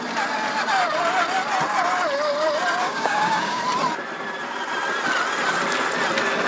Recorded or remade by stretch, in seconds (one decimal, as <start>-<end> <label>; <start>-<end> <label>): 0.0-2.8 recorded; 2.8-3.6 remade; 3.6-6.5 recorded